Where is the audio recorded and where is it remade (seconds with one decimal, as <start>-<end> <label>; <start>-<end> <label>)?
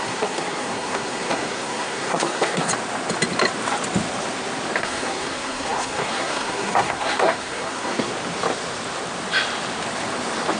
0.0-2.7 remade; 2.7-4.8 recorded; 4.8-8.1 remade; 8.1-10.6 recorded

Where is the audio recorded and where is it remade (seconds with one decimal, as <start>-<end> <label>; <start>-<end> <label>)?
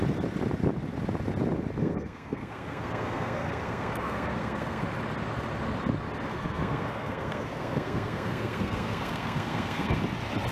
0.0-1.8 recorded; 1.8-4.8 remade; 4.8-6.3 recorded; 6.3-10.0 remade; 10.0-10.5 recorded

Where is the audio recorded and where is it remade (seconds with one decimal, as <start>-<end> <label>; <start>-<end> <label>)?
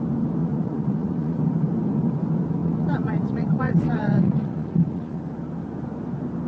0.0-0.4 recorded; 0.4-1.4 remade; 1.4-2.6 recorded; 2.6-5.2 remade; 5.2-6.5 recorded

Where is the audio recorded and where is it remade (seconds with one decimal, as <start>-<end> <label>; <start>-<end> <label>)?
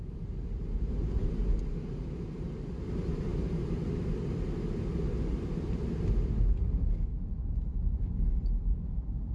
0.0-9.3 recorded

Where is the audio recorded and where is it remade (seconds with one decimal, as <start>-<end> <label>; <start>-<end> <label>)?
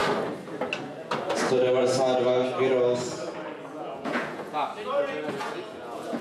0.0-3.7 recorded; 3.7-4.7 remade; 4.7-5.3 recorded; 5.3-6.2 remade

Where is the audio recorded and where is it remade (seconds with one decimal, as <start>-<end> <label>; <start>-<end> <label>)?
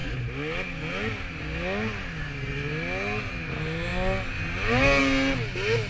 0.0-5.9 recorded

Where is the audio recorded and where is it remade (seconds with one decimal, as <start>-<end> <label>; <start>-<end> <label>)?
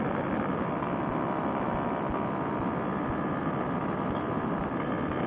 0.0-5.3 recorded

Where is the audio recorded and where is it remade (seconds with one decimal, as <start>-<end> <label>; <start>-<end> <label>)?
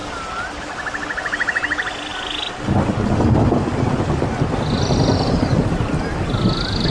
0.0-6.9 recorded